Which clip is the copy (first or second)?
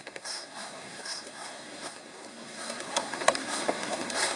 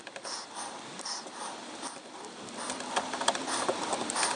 first